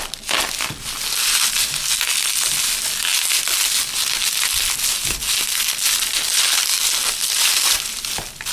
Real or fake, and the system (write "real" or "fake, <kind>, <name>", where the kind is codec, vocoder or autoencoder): real